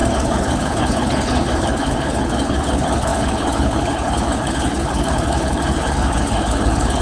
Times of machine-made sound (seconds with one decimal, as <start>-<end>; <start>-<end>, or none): 0.0-7.0